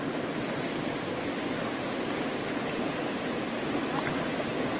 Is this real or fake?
real